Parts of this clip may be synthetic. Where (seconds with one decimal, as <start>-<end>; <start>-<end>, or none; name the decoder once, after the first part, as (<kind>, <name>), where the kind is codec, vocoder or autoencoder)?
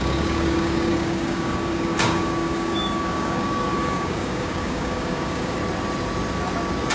0.0-5.6 (codec, DAC)